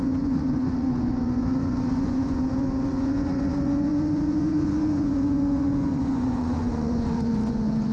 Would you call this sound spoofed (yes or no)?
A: yes